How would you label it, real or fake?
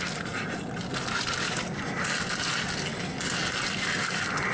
real